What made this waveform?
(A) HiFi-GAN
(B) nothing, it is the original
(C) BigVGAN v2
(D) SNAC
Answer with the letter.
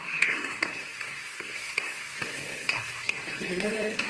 D